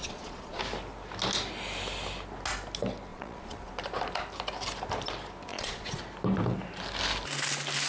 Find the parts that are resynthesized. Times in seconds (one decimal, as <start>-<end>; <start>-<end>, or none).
0.0-0.6; 3.1-3.7; 5.5-6.0